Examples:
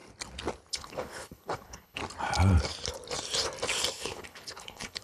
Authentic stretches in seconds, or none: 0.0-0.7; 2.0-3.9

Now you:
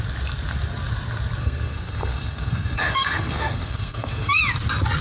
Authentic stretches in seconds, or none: 0.0-1.4; 4.4-5.0

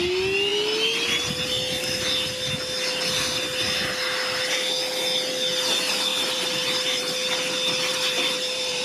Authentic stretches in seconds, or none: 0.0-6.1; 7.1-7.9

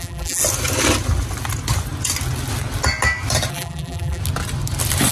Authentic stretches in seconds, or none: 0.4-3.5; 4.2-5.1

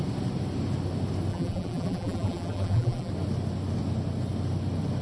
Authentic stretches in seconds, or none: 0.0-1.3; 3.1-5.0